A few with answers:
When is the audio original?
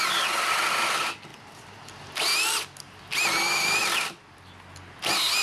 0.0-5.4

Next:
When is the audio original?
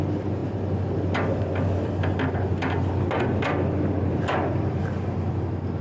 0.0-5.8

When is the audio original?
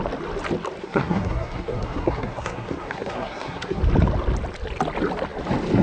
0.0-0.8; 3.8-5.8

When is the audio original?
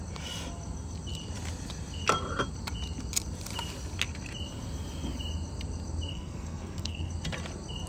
0.0-6.1; 7.1-7.9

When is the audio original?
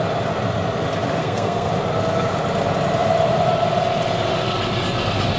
0.0-1.2; 1.7-5.4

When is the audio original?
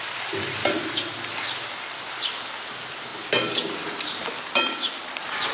0.0-5.5